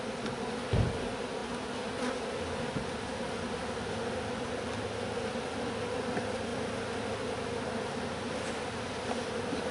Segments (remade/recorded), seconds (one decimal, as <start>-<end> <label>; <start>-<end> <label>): 0.0-9.7 recorded